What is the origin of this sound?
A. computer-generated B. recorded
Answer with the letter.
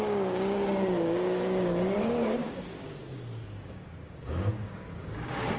A